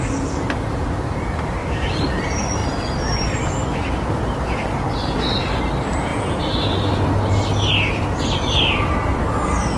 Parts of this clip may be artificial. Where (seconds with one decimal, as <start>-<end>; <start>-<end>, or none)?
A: 1.6-2.2; 9.1-9.8